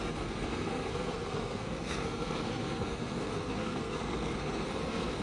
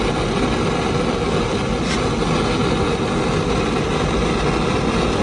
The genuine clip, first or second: second